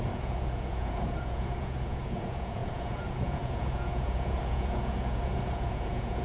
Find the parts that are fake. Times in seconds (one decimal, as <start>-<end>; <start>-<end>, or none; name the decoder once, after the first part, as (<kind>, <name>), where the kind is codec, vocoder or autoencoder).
0.0-6.2 (vocoder, Vocos)